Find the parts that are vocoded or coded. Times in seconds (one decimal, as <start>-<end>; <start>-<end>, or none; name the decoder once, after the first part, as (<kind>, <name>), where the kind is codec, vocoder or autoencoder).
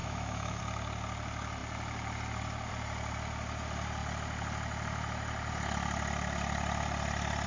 0.0-0.6 (autoencoder, DAC-VAE)